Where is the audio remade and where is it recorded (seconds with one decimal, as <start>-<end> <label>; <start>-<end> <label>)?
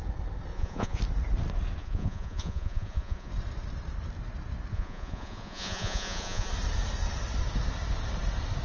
0.0-0.5 recorded; 0.5-1.0 remade; 1.0-1.8 recorded; 1.8-3.3 remade; 3.3-4.7 recorded; 4.7-6.5 remade; 6.5-8.6 recorded